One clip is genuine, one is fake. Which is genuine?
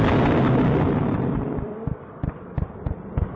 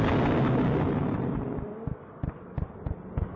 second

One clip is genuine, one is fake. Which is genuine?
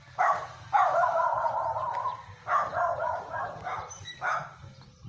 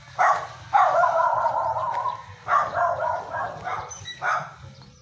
second